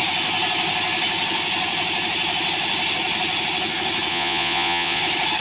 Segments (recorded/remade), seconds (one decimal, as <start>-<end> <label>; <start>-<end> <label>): 0.0-4.1 recorded; 4.1-5.0 remade; 5.0-5.4 recorded